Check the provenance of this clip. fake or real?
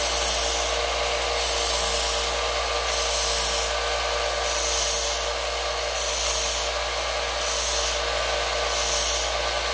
real